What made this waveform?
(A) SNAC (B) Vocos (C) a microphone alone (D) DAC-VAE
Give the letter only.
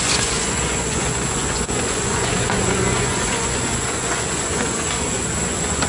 B